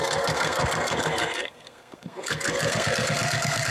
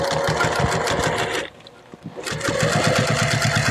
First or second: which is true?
second